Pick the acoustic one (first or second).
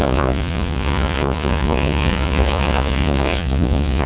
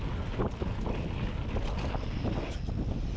second